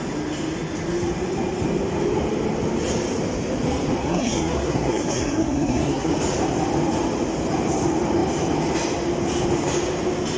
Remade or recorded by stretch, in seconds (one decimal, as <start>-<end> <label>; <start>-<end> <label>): 0.0-4.0 recorded; 4.0-6.1 remade; 6.1-10.4 recorded